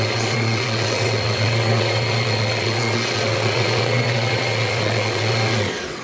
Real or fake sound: fake